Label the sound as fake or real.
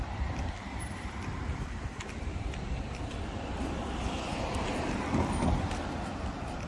fake